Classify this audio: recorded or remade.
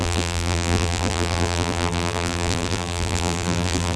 remade